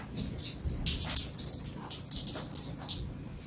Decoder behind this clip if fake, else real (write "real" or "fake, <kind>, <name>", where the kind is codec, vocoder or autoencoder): real